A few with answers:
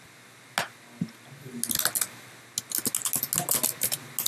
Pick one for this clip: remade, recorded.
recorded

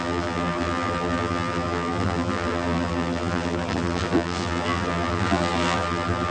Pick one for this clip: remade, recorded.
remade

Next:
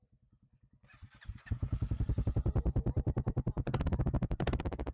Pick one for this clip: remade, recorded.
recorded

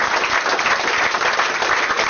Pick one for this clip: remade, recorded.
recorded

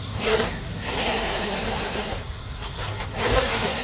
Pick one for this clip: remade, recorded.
remade